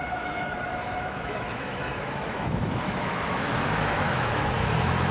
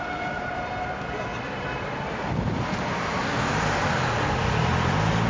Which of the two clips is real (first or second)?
second